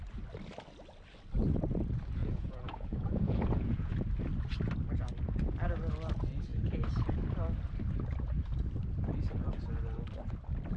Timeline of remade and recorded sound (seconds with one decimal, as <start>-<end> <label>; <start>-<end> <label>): 0.0-2.2 recorded; 2.2-3.9 remade; 3.9-10.8 recorded